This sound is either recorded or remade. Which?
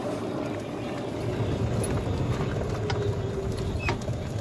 recorded